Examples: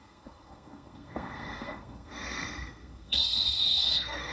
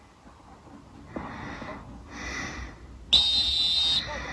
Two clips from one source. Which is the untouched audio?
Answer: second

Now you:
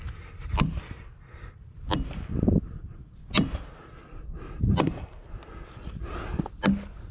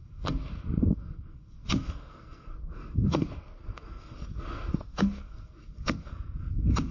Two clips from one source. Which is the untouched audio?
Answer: first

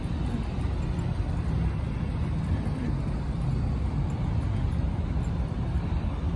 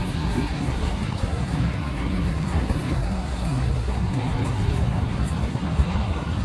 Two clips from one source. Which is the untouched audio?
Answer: first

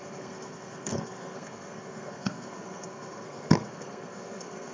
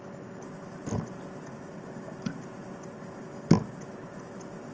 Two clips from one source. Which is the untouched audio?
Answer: second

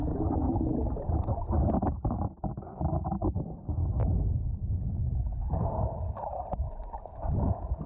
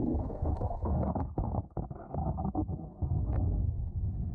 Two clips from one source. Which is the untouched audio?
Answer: first